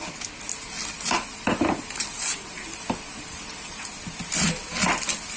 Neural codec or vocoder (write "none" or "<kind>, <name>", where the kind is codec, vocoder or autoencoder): none